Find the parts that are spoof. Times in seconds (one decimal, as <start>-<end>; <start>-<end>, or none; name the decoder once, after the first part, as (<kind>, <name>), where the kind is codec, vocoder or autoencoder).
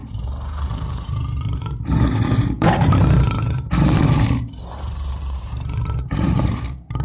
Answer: 0.0-7.0 (vocoder, BigVGAN v2)